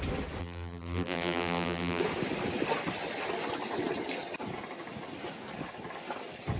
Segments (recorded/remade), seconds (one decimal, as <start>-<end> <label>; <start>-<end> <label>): 0.0-0.4 recorded; 0.4-2.0 remade; 2.0-6.6 recorded